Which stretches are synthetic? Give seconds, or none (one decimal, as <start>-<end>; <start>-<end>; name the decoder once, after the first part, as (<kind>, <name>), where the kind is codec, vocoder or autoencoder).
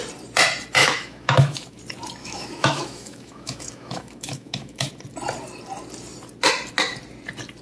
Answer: 0.8-1.8 (autoencoder, DAC-VAE); 2.2-4.9